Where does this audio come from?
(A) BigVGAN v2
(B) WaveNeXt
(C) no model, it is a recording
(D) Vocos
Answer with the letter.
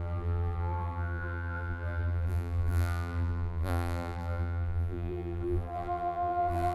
A